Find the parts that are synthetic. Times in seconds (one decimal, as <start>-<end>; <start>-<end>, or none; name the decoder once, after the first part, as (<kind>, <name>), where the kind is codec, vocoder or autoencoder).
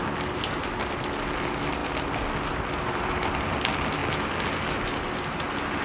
none